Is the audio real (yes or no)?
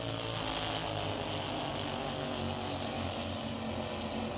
yes